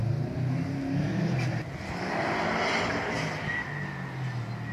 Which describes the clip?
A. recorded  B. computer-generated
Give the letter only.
A